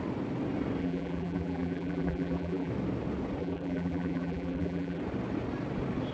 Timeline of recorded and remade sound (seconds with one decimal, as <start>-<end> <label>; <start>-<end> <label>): 0.0-0.8 recorded; 0.8-2.7 remade; 2.7-3.4 recorded; 3.4-5.0 remade; 5.0-6.1 recorded

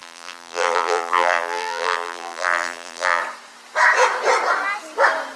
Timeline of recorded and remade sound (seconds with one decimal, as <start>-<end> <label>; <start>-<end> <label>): 0.0-3.2 remade; 3.2-5.4 recorded

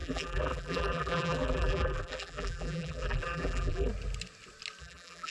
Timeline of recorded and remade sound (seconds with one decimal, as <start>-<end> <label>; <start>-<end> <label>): 0.0-3.9 remade; 3.9-4.8 recorded; 4.8-5.3 remade

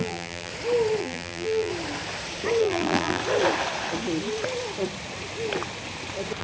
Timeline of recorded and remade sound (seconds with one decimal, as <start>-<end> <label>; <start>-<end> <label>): 0.0-0.5 remade; 0.5-1.0 recorded; 1.0-1.7 remade; 1.7-2.6 recorded; 2.6-3.2 remade; 3.2-6.4 recorded

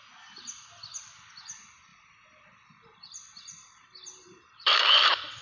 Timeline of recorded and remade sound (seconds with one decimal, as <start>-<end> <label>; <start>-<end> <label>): 0.0-1.9 recorded; 1.9-5.4 remade

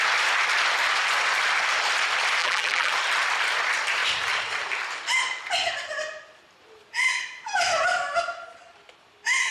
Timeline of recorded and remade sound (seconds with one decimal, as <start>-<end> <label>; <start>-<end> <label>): 0.0-2.4 recorded; 2.4-2.9 remade; 2.9-9.5 recorded